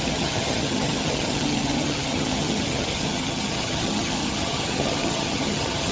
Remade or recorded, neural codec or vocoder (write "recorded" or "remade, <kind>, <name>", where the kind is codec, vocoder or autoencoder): remade, vocoder, HiFi-GAN